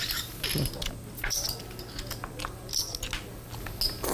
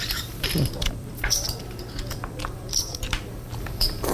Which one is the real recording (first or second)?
first